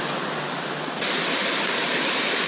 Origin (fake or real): real